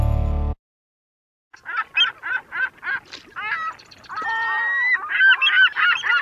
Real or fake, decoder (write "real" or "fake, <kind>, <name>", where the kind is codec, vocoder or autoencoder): real